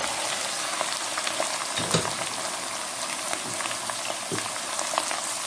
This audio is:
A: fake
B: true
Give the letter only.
B